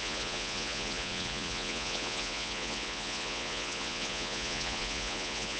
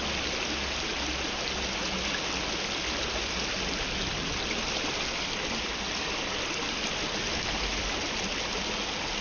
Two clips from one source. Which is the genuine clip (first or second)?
second